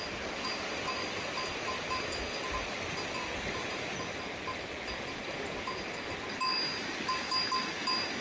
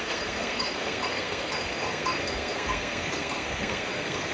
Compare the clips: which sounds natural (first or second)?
first